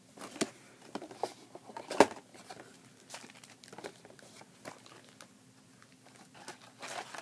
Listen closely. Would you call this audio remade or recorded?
recorded